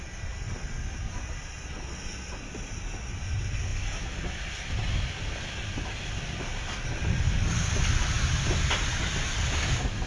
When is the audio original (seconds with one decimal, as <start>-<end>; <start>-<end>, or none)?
0.0-10.1